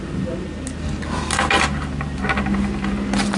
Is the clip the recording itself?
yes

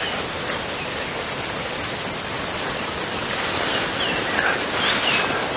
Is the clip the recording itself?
yes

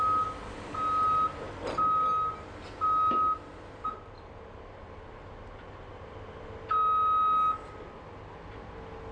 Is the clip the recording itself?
yes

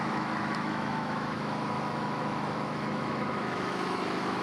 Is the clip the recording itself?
no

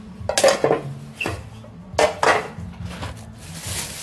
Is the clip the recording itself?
yes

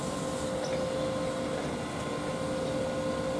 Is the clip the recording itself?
yes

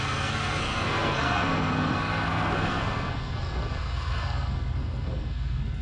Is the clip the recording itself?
no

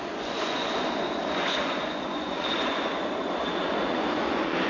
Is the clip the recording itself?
no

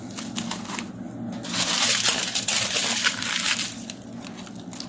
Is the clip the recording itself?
yes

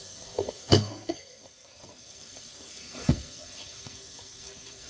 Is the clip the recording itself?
no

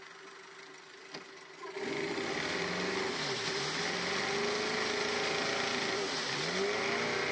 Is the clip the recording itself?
yes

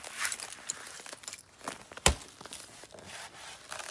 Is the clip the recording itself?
yes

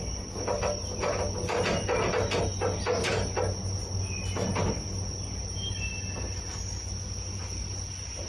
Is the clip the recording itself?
yes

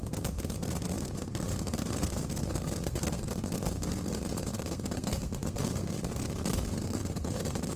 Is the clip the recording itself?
no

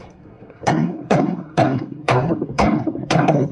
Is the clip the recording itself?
no